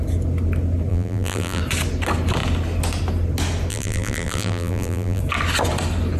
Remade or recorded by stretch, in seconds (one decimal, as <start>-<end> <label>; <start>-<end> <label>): 0.0-0.9 recorded; 0.9-1.6 remade; 1.6-3.7 recorded; 3.7-5.2 remade; 5.2-6.2 recorded